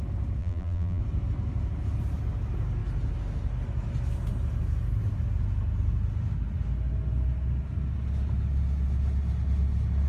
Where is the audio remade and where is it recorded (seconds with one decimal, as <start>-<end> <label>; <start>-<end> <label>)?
0.0-0.4 recorded; 0.4-1.0 remade; 1.0-10.1 recorded